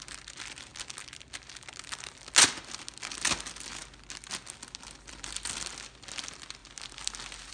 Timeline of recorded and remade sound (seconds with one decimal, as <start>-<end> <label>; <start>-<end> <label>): 0.0-7.5 recorded